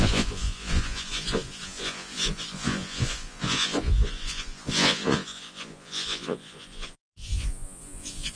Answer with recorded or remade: remade